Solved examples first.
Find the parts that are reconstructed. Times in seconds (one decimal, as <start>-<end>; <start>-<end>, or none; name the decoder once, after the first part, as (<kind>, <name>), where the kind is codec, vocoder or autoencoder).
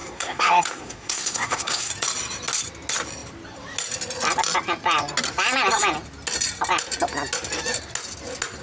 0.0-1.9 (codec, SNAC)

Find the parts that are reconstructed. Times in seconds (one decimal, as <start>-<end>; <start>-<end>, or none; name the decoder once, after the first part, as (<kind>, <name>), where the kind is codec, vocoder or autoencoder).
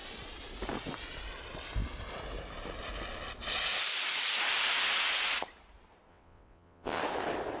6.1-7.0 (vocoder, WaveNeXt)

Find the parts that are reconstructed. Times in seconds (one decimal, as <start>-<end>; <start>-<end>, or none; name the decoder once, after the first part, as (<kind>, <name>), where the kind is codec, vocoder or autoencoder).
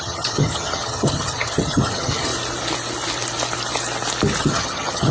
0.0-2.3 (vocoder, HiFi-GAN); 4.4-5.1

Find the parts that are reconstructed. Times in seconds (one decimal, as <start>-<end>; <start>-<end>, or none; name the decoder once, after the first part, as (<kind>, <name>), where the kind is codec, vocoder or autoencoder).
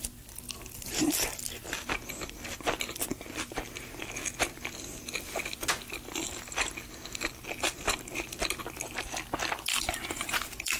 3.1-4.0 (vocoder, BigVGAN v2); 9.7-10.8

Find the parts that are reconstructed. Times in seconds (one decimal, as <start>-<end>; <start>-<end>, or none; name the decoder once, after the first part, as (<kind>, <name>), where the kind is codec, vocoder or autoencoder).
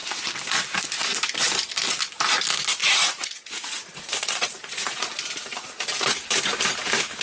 2.8-5.1 (vocoder, Vocos)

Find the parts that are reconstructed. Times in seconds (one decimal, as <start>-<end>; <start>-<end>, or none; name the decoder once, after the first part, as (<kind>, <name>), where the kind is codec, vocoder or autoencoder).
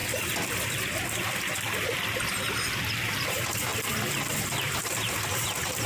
3.3-3.7 (vocoder, BigVGAN v2); 4.3-5.9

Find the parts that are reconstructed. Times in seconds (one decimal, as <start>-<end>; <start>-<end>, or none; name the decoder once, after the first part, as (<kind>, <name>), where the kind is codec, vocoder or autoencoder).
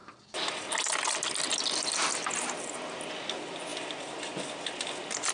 none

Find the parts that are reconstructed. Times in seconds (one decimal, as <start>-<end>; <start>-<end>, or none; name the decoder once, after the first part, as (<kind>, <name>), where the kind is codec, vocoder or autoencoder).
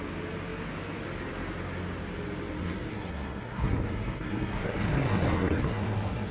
2.6-6.3 (codec, SNAC)